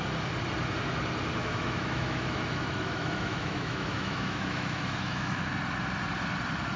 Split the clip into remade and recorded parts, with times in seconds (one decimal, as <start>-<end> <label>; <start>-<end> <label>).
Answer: 0.0-1.4 recorded; 1.4-5.5 remade; 5.5-6.8 recorded